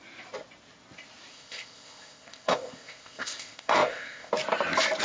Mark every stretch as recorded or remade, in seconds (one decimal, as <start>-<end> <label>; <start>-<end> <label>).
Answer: 0.0-1.3 recorded; 1.3-4.3 remade; 4.3-5.0 recorded